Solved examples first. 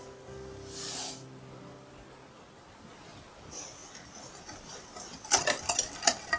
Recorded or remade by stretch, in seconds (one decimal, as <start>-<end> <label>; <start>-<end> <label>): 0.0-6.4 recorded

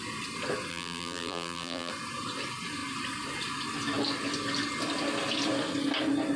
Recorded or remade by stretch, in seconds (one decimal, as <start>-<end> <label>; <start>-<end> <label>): 0.0-0.7 recorded; 0.7-1.9 remade; 1.9-6.4 recorded

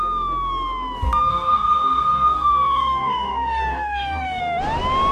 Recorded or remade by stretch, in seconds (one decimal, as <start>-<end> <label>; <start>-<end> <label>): 0.0-1.3 recorded; 1.3-4.4 remade; 4.4-5.1 recorded

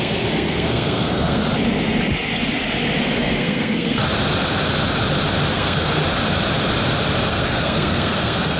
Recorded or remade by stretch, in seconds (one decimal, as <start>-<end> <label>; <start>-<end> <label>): 0.0-1.4 remade; 1.4-3.0 recorded; 3.0-4.0 remade; 4.0-5.5 recorded; 5.5-6.0 remade; 6.0-7.3 recorded; 7.3-8.6 remade

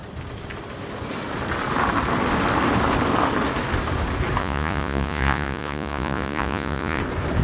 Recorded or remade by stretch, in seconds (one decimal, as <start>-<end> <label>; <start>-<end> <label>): 0.0-4.4 recorded; 4.4-7.0 remade; 7.0-7.4 recorded

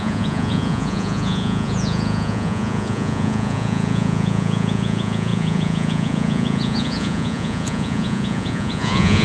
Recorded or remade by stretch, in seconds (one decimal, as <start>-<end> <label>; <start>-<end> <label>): 0.0-9.2 remade

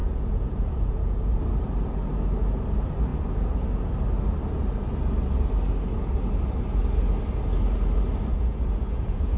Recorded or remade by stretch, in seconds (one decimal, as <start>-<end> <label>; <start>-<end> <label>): 0.0-1.4 remade; 1.4-8.3 recorded; 8.3-9.4 remade